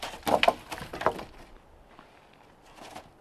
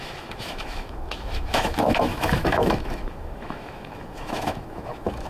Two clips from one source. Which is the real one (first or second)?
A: first